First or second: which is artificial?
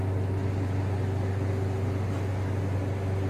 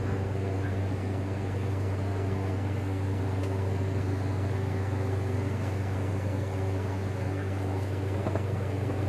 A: second